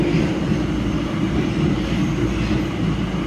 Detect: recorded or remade recorded